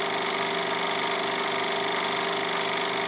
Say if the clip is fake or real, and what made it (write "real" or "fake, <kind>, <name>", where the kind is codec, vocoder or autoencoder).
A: real